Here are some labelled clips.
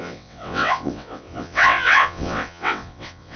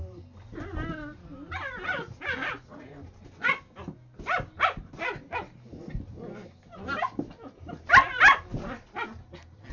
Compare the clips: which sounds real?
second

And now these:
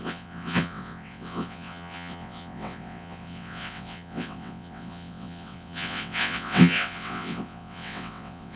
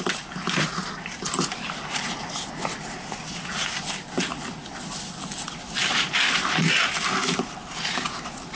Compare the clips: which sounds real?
second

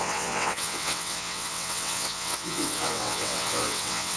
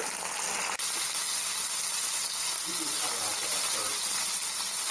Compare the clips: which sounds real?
second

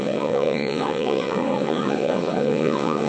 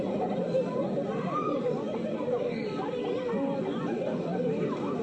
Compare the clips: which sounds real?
second